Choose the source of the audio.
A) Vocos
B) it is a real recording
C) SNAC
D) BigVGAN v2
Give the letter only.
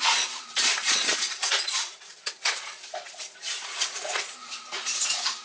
A